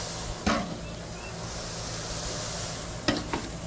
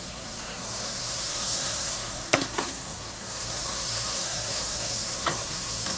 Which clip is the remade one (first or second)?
second